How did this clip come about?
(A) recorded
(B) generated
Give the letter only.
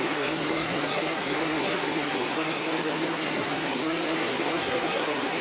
B